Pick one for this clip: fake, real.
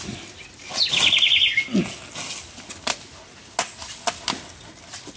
real